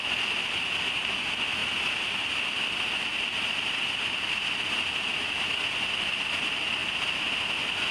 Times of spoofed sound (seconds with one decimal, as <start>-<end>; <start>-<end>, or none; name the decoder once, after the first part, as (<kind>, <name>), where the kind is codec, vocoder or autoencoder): none